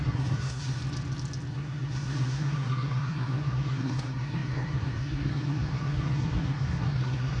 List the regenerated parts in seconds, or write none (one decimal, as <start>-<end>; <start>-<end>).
0.0-0.8; 1.5-7.4